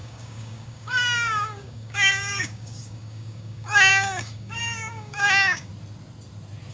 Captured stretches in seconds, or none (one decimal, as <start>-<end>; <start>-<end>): 5.7-6.7